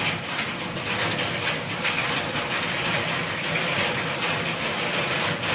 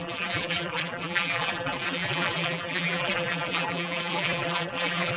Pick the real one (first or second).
first